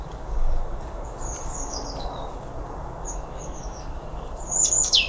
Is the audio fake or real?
fake